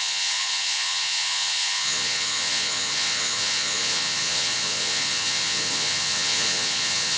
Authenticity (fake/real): fake